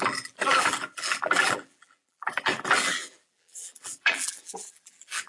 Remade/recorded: remade